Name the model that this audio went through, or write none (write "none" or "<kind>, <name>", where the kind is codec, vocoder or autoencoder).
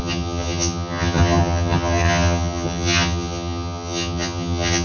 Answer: vocoder, HiFi-GAN